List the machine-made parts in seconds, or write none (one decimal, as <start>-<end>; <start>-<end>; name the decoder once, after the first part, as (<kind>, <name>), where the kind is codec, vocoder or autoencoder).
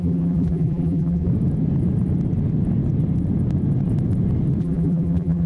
0.0-1.3 (vocoder, BigVGAN v2); 4.6-5.5